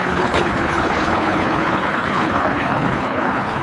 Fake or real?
fake